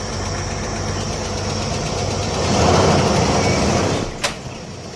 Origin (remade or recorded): recorded